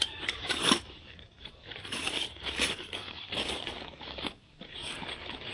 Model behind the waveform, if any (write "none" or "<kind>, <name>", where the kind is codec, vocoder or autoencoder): codec, DAC